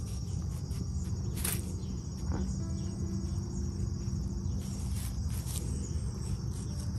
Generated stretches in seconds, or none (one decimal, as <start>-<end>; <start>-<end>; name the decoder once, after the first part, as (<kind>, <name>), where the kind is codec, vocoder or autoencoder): none